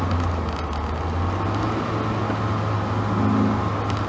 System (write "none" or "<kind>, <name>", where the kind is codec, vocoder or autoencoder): none